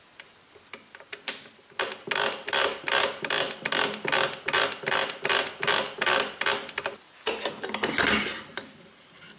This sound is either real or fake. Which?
real